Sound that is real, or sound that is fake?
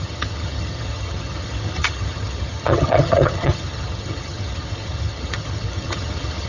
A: fake